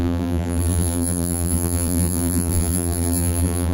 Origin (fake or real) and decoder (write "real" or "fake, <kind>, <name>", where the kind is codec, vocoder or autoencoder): fake, vocoder, BigVGAN v2